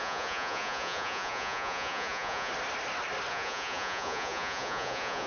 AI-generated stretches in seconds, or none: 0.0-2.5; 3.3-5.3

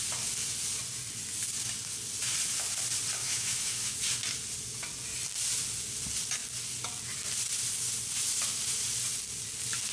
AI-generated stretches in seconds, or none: 3.2-4.0

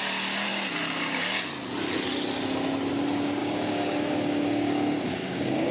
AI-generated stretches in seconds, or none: 3.4-5.7